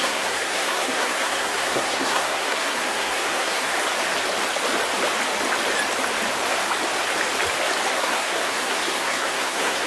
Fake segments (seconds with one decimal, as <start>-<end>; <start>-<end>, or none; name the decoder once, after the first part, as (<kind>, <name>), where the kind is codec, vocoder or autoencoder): 0.0-3.7 (codec, SNAC); 7.9-9.9